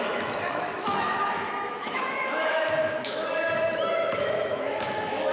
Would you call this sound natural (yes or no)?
no